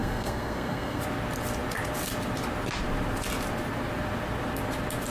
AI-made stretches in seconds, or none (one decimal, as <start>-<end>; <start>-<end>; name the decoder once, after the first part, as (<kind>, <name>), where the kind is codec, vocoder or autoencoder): 0.0-1.0 (codec, SNAC)